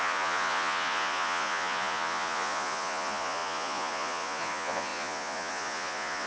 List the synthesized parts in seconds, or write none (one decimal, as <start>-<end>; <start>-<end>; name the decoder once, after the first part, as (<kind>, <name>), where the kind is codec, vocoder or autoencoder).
0.0-6.3 (vocoder, Vocos)